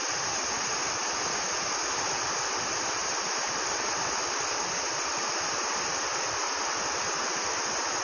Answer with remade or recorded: recorded